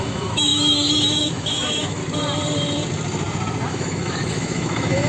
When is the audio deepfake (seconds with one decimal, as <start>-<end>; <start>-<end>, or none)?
0.0-2.0; 3.7-5.1